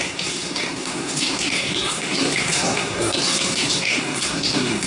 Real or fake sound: fake